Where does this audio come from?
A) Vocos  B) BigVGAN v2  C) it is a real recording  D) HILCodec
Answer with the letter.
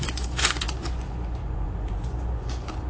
A